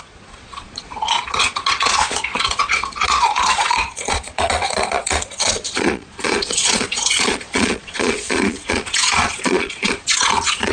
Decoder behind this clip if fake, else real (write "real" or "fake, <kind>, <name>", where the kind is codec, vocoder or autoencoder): fake, vocoder, Vocos